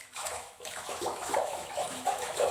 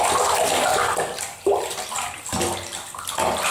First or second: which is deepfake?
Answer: first